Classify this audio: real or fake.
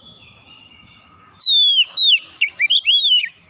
fake